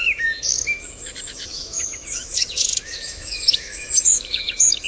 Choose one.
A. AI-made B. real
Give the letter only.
A